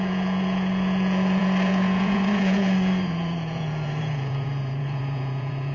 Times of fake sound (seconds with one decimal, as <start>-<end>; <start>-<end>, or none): 0.0-5.7